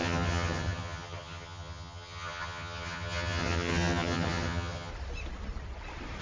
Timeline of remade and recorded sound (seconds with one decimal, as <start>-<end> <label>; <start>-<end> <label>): 0.0-4.9 remade; 4.9-6.2 recorded